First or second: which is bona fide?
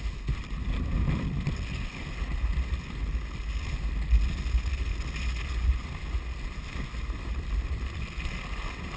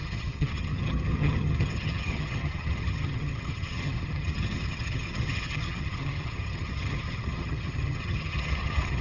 first